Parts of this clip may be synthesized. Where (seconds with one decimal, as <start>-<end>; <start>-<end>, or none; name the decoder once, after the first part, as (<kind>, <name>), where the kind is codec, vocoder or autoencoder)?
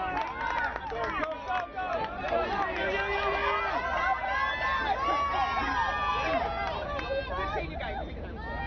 none